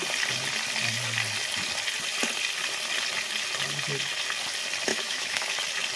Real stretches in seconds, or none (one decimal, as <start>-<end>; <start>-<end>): 0.0-4.9; 5.5-6.0